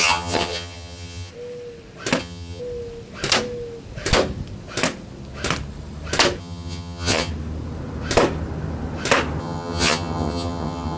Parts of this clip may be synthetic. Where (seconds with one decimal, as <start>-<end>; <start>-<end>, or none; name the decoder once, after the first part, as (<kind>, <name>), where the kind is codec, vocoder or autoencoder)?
0.0-1.3 (vocoder, HiFi-GAN); 2.2-2.6; 6.4-7.3; 9.4-11.0